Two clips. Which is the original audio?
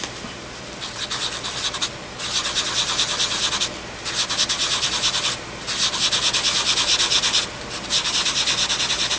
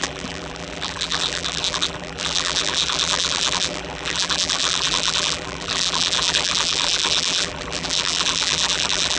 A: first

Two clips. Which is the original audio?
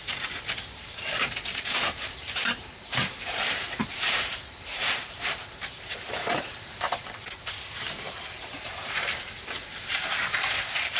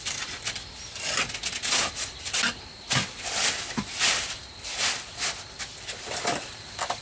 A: second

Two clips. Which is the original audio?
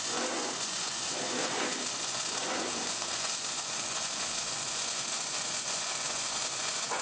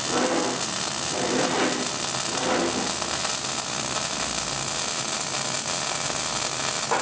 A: second